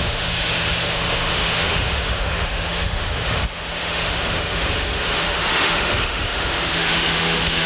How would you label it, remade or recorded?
remade